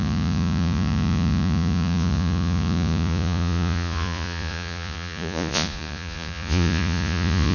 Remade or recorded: remade